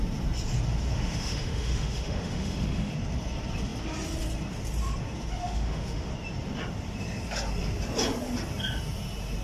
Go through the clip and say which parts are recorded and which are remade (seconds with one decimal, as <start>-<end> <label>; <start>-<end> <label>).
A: 0.0-0.9 recorded; 0.9-2.9 remade; 2.9-5.4 recorded; 5.4-6.1 remade; 6.1-9.4 recorded